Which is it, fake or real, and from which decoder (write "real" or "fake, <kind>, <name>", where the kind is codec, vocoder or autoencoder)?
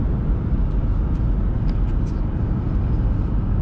real